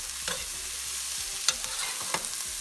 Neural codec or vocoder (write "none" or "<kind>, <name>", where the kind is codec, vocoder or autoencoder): none